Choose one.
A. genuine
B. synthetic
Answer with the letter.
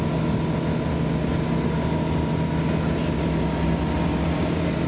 A